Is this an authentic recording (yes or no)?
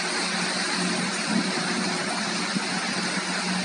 yes